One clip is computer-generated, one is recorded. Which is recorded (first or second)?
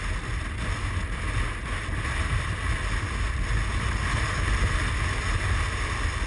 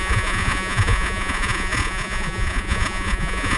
first